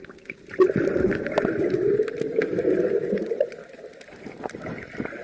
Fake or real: real